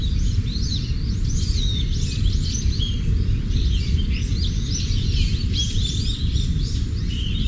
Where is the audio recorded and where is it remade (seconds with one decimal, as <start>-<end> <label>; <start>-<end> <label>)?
0.0-7.5 recorded